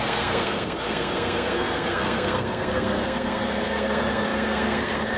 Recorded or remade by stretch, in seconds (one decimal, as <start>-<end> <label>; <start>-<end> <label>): 0.0-5.2 remade